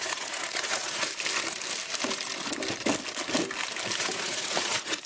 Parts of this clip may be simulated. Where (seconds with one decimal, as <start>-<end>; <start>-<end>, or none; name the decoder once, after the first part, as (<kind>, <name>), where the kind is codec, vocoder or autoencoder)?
0.0-1.1 (vocoder, Vocos); 4.0-5.1